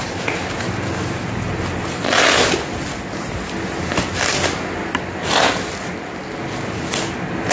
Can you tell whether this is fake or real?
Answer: real